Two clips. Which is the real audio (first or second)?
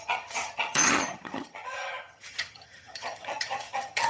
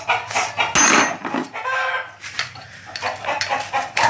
second